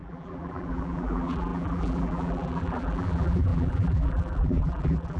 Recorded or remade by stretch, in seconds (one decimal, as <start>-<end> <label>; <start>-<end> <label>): 0.0-5.2 remade